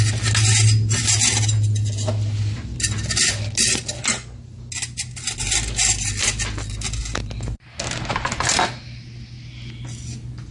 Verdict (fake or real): real